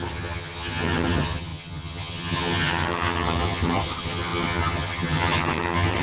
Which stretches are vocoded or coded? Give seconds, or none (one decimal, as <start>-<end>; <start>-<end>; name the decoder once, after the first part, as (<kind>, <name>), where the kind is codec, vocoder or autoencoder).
0.0-6.0 (vocoder, HiFi-GAN)